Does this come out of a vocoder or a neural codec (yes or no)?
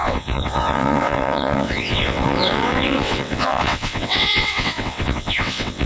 yes